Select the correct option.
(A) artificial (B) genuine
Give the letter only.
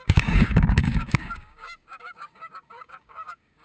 A